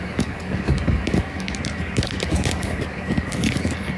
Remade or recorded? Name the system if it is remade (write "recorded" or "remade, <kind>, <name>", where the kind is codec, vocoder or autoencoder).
remade, codec, DAC